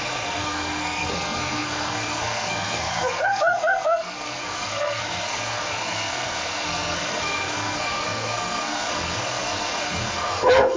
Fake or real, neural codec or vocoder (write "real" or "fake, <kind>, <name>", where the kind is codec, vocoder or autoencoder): fake, codec, SNAC